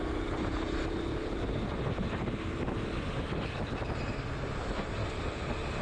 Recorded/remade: recorded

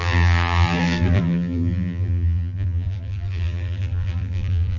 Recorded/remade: remade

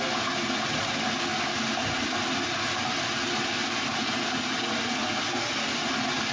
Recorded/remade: recorded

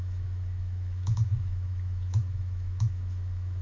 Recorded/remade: remade